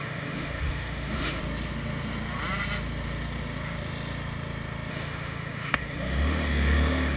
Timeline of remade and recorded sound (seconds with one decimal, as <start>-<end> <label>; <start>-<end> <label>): 0.0-1.4 remade; 1.4-4.9 recorded; 4.9-7.2 remade